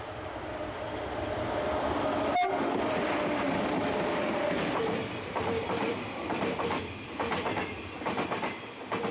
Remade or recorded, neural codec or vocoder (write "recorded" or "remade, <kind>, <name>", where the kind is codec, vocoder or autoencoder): remade, vocoder, BigVGAN v2